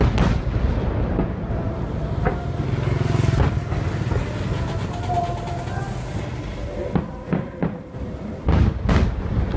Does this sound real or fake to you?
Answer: real